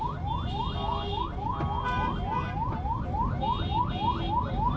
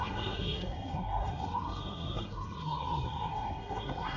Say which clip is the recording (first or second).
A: first